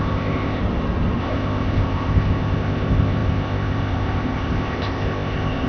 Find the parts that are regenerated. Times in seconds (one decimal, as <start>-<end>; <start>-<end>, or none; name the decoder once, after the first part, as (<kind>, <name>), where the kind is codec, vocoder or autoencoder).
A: 0.0-0.6 (codec, ZipCodec); 1.2-5.7